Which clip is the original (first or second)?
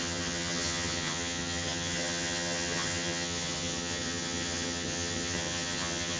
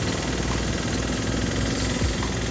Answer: second